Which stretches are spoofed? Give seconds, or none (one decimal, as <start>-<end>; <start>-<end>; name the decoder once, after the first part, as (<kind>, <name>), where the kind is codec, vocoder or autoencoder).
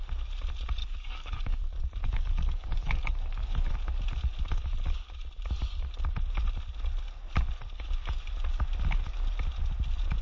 0.8-1.6 (codec, DAC); 2.0-3.7